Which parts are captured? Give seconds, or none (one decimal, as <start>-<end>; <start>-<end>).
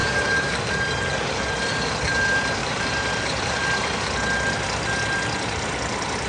0.8-2.6; 3.6-6.3